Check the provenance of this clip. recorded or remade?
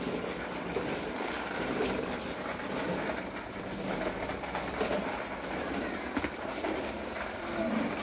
recorded